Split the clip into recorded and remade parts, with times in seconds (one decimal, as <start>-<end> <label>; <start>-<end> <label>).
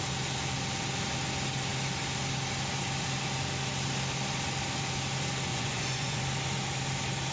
0.0-5.5 recorded; 5.5-6.2 remade; 6.2-7.3 recorded